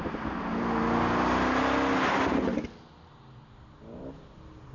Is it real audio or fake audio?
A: real